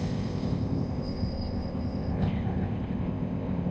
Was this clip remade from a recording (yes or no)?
yes